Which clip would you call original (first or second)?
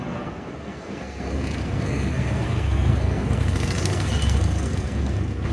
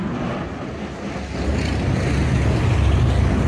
second